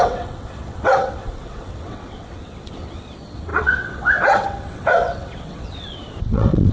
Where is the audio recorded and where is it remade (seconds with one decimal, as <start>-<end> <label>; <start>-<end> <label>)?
0.0-6.7 remade